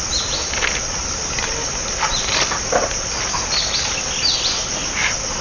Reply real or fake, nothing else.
real